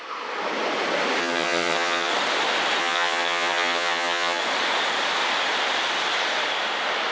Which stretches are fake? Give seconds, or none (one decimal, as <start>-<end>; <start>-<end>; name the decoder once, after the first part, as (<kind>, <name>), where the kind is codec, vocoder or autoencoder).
1.2-2.1 (vocoder, HiFi-GAN); 2.8-4.4